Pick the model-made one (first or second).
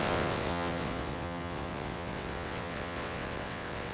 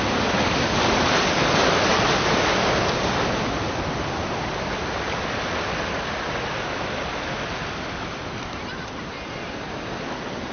first